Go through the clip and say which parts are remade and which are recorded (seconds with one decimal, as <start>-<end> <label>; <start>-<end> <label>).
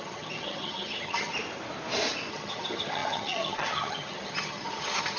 0.0-1.3 remade; 1.3-2.3 recorded; 2.3-5.2 remade